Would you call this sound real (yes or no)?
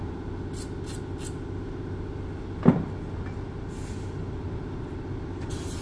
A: yes